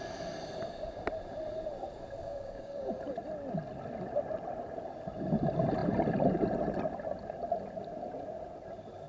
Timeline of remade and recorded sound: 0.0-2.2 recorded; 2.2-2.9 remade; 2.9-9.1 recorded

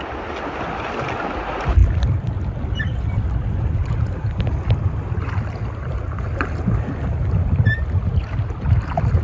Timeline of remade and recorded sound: 0.0-9.2 recorded

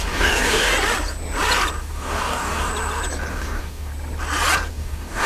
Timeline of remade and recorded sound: 0.0-0.7 remade; 0.7-1.8 recorded; 1.8-2.7 remade; 2.7-3.3 recorded; 3.3-3.9 remade; 3.9-4.7 recorded; 4.7-5.3 remade

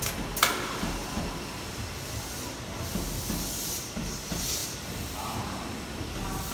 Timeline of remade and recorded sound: 0.0-6.5 recorded